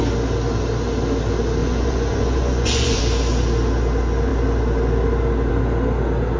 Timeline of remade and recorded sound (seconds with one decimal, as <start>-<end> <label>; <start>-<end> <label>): 0.0-1.6 recorded; 1.6-3.0 remade; 3.0-6.4 recorded